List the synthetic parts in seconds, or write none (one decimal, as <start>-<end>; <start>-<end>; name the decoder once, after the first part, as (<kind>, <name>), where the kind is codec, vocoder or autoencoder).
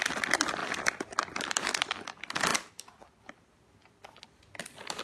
2.5-3.2 (vocoder, BigVGAN v2)